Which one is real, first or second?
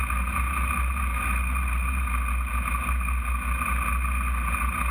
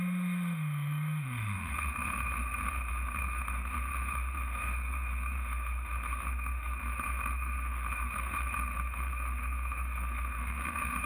first